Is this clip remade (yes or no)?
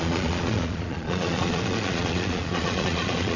yes